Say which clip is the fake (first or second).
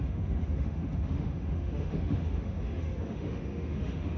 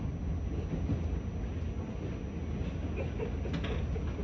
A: first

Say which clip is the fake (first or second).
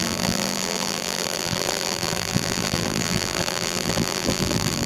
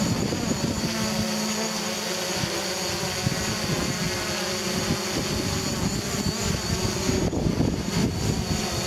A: first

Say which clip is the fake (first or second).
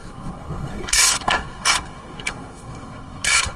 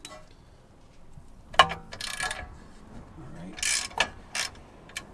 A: first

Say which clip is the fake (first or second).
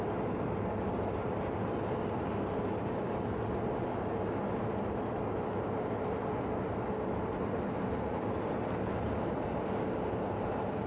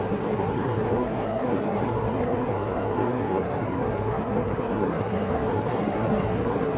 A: second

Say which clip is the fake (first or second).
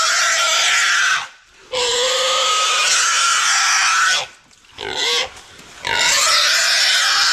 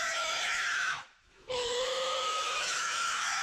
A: second